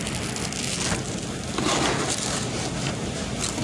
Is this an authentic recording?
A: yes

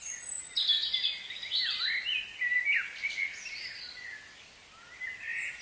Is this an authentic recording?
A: yes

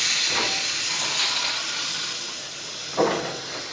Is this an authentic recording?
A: yes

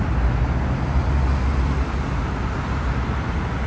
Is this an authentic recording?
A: yes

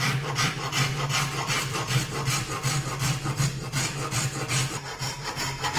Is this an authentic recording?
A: no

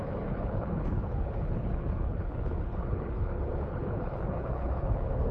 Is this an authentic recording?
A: no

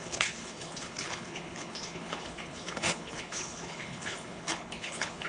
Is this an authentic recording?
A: no